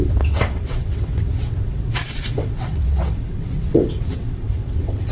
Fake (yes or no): yes